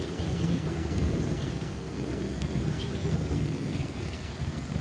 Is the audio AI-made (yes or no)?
yes